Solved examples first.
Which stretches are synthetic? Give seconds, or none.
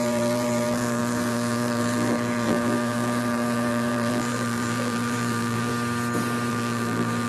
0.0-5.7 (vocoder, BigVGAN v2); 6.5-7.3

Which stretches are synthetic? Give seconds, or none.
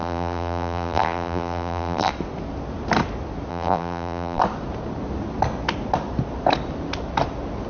0.0-2.1 (vocoder, BigVGAN v2); 3.5-4.4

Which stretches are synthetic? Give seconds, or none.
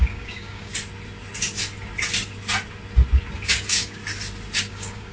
0.0-0.7 (codec, DAC); 3.5-4.0; 4.6-5.1